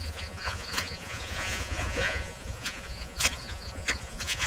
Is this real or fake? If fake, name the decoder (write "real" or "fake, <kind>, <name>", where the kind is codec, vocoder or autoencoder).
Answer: fake, vocoder, Vocos